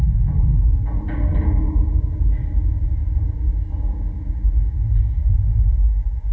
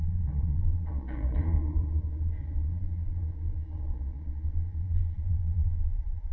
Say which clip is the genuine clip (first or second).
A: first